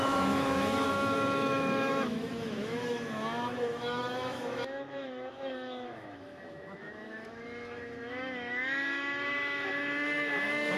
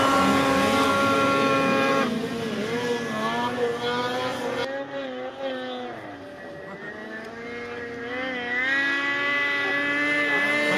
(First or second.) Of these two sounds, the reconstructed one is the first